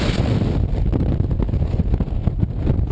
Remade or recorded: recorded